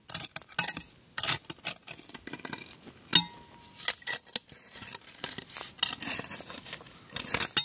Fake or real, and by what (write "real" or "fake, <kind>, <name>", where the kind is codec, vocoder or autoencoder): real